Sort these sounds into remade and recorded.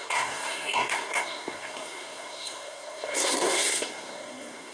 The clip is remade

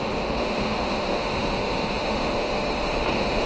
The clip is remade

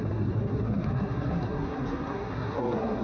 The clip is remade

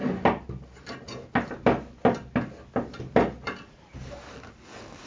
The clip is recorded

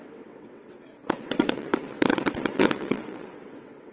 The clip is remade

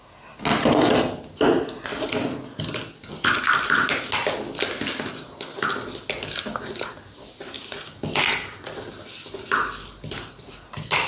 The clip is recorded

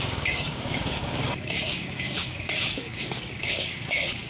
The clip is remade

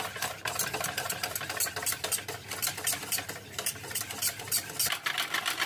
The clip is recorded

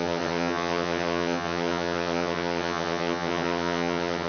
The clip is remade